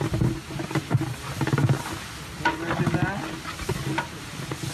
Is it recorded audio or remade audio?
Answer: recorded